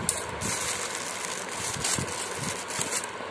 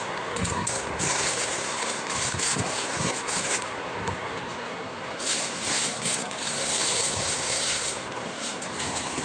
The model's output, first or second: second